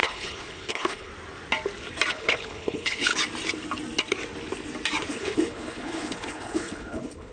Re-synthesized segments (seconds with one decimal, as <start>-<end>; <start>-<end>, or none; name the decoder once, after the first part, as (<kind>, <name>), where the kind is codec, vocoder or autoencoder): 0.0-1.1 (codec, HILCodec); 2.1-3.1; 5.1-7.3